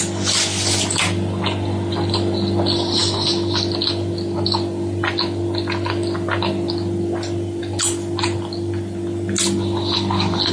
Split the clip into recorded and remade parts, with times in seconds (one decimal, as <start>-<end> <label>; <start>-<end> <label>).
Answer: 0.0-10.5 recorded